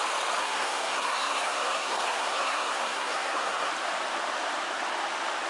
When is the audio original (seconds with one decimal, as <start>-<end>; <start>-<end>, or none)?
0.0-0.4; 3.7-5.5